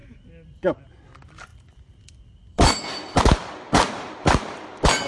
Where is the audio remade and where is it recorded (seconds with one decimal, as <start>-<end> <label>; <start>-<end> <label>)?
0.0-0.8 remade; 0.8-1.5 recorded; 1.5-3.2 remade; 3.2-5.1 recorded